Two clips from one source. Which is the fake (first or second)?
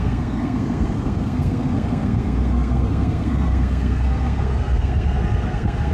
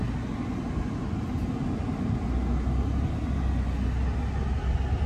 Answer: first